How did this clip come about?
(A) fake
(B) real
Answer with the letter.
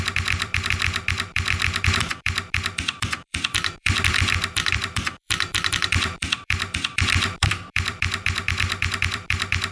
A